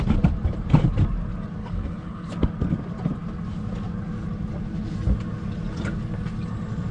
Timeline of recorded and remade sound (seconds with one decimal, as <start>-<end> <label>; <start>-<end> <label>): 0.0-1.6 recorded; 1.6-2.3 remade; 2.3-6.9 recorded